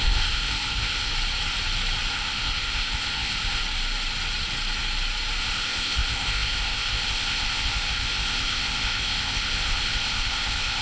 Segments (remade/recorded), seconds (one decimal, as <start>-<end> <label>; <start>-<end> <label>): 0.0-1.1 remade; 1.1-2.1 recorded; 2.1-3.6 remade; 3.6-5.4 recorded; 5.4-10.8 remade